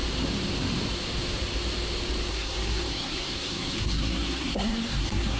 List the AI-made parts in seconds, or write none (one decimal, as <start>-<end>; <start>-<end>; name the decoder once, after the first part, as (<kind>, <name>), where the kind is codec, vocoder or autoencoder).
2.3-5.4 (codec, SNAC)